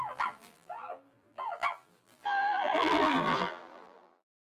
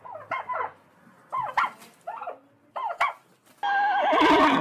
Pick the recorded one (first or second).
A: second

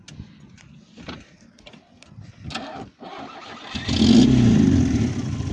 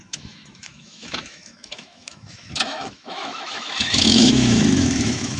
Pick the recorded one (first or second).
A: first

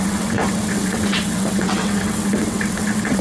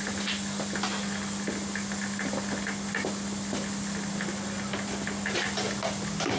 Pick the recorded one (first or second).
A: second